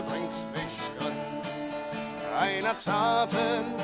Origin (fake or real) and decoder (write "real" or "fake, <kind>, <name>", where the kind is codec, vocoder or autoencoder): real